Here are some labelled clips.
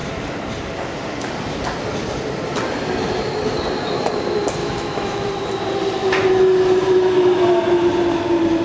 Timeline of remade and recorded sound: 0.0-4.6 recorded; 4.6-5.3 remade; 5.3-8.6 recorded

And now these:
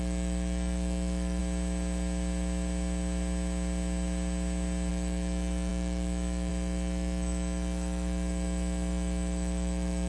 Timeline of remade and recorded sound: 0.0-1.4 remade; 1.4-4.9 recorded; 4.9-10.1 remade

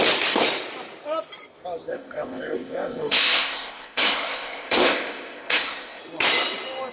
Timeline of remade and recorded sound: 0.0-1.9 recorded; 1.9-6.0 remade; 6.0-6.9 recorded

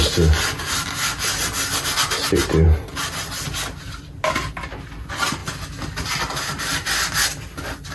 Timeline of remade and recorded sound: 0.0-7.9 recorded

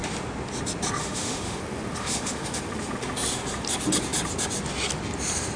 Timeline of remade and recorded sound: 0.0-1.0 recorded; 1.0-1.6 remade; 1.6-2.0 recorded; 2.0-2.6 remade; 2.6-5.6 recorded